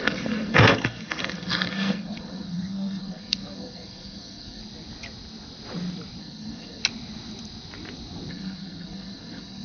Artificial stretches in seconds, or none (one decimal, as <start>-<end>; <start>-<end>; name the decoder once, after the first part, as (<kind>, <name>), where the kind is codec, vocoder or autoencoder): 0.0-4.6 (codec, SNAC); 6.2-6.8; 8.3-9.6